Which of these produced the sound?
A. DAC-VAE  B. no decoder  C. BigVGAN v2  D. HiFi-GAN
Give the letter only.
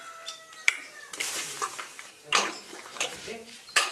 C